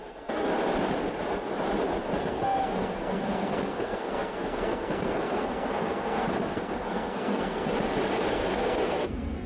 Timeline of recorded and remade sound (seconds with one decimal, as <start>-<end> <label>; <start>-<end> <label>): 0.0-0.5 remade; 0.5-2.0 recorded; 2.0-7.7 remade; 7.7-8.3 recorded; 8.3-9.5 remade